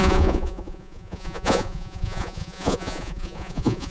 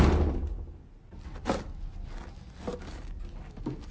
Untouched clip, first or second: second